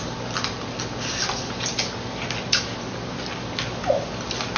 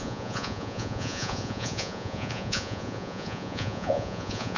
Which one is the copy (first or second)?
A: second